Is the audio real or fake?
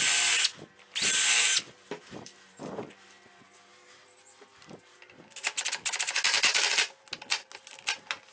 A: real